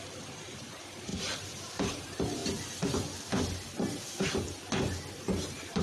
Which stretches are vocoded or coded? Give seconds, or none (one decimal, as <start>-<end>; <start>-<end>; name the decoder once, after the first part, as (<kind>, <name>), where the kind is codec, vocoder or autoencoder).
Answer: 0.0-2.4 (vocoder, BigVGAN v2); 5.2-5.8